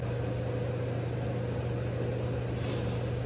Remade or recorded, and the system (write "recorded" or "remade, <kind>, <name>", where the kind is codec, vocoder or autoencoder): recorded